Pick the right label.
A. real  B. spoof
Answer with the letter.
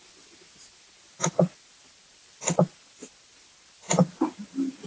A